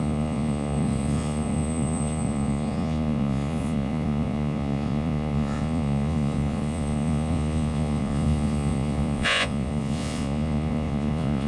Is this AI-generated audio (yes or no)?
yes